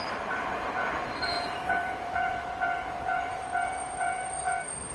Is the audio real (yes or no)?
no